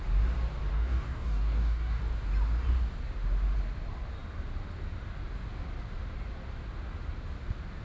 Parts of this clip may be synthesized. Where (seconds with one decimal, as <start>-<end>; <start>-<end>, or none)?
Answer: 0.7-2.0